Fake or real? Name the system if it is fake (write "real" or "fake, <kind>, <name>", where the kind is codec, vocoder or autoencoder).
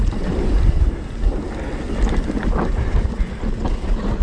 real